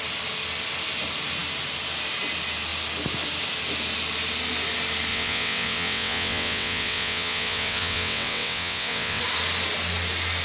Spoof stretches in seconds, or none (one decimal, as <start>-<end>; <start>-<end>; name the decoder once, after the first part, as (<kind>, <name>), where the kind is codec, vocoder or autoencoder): 5.1-9.2 (vocoder, WaveNeXt)